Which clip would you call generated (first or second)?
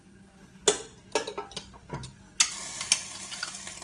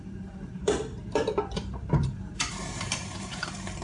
second